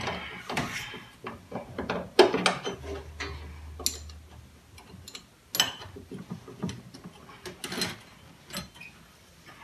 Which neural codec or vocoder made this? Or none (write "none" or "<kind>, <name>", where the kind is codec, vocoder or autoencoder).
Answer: none